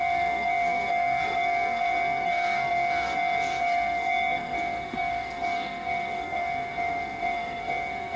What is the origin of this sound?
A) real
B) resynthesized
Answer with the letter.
B